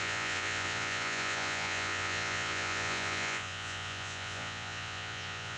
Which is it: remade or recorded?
remade